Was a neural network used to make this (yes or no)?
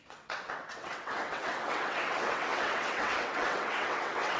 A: yes